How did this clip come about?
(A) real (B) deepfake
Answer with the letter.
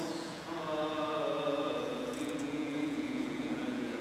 B